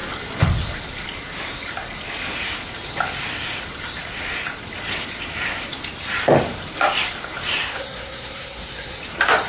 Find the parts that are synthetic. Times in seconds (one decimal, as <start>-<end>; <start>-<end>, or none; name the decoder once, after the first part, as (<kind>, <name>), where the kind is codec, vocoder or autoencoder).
7.6-9.0 (codec, SNAC)